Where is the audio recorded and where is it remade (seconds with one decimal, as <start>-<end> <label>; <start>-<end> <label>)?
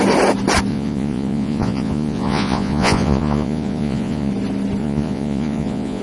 0.0-0.7 recorded; 0.7-4.3 remade; 4.3-4.8 recorded; 4.8-6.0 remade